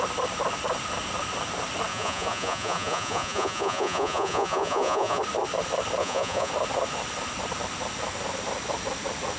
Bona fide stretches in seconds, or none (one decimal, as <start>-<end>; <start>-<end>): 0.0-1.9; 5.2-6.0; 6.5-9.4